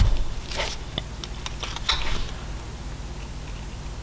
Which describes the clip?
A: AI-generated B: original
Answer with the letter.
B